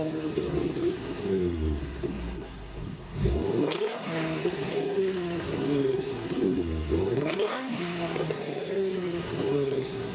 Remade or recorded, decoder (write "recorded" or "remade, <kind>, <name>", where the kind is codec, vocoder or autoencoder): remade, codec, SNAC